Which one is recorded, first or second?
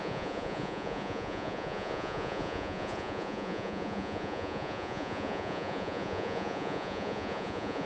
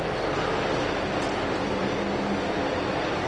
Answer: second